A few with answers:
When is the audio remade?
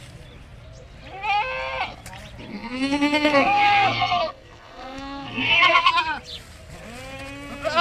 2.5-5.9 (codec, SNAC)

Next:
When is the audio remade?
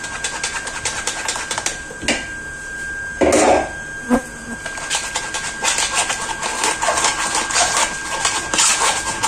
none